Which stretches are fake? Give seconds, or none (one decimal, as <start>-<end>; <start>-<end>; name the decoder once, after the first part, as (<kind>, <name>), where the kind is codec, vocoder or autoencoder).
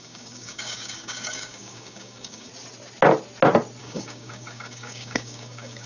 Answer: 0.0-2.5 (codec, DAC); 3.8-5.9